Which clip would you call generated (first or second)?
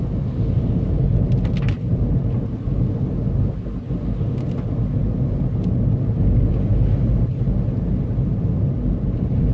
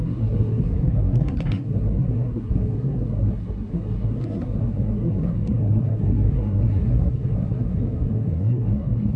second